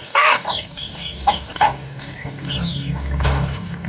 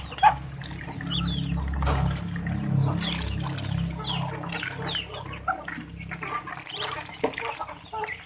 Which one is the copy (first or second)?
first